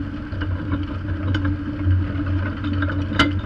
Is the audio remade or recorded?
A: recorded